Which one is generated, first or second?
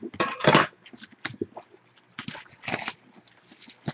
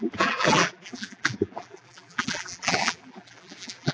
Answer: second